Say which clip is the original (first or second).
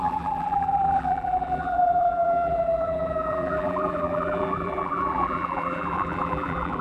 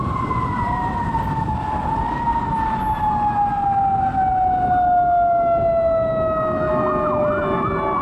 second